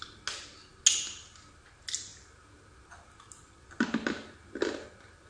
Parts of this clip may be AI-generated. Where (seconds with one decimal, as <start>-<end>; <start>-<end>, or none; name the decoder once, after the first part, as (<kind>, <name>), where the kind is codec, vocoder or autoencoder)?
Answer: none